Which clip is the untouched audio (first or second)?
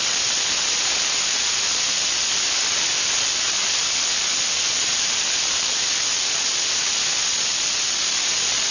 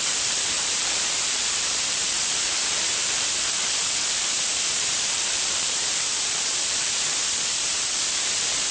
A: first